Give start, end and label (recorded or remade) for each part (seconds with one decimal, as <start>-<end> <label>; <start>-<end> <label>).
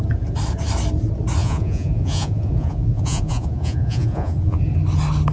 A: 0.0-1.4 recorded; 1.4-4.6 remade; 4.6-5.3 recorded